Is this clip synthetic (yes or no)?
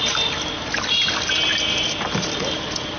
no